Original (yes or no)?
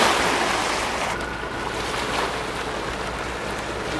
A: yes